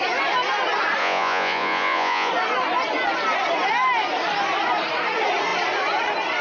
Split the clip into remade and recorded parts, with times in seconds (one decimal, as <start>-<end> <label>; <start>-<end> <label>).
0.0-1.0 recorded; 1.0-2.3 remade; 2.3-6.4 recorded